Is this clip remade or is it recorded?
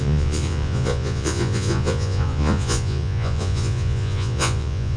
remade